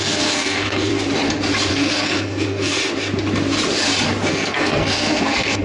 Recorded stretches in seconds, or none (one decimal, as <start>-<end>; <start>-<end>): 0.9-1.7; 2.8-4.3